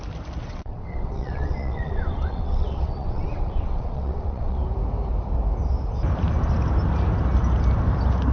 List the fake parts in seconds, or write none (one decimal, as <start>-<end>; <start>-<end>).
0.4-4.6